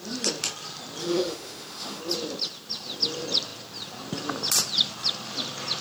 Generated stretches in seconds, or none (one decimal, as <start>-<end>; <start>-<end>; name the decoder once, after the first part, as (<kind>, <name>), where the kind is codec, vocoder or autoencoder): 1.0-2.0 (autoencoder, DAC-VAE)